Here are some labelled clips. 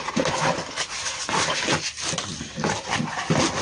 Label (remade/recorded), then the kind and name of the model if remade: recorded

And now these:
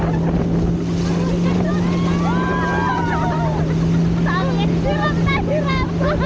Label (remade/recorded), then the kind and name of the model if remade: recorded